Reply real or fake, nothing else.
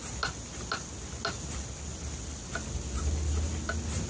real